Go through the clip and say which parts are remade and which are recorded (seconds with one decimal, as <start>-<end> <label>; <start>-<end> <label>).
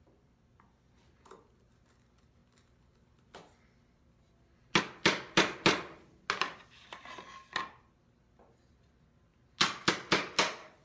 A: 0.0-10.8 recorded